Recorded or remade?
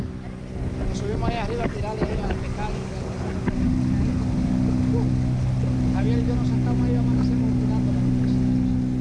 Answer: recorded